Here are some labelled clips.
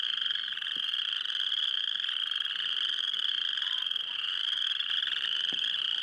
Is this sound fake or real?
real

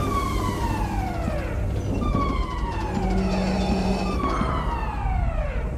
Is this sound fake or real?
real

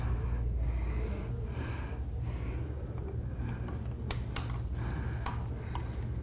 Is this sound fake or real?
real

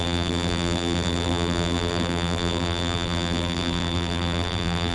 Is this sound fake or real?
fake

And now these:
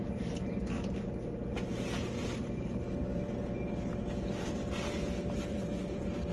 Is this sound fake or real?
real